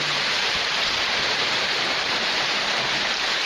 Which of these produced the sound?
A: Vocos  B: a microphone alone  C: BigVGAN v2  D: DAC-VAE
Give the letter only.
C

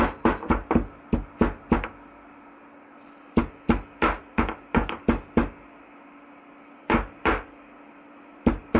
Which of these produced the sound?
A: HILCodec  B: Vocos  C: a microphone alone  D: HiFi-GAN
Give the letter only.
C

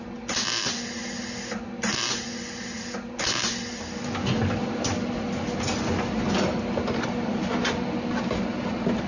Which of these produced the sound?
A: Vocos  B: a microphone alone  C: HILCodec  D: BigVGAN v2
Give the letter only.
B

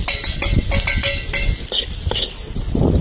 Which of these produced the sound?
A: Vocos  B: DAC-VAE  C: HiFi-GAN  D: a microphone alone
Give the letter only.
D